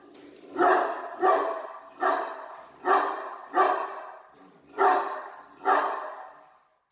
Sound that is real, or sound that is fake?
real